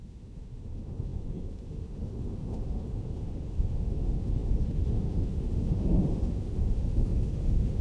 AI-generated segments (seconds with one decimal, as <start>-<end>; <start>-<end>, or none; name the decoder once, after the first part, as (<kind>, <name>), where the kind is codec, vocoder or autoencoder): 0.0-7.8 (autoencoder, DAC-VAE)